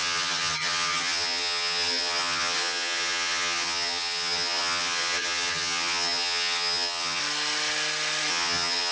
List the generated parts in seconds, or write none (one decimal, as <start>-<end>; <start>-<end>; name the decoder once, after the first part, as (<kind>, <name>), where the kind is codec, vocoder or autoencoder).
0.0-7.2 (vocoder, HiFi-GAN); 8.3-8.9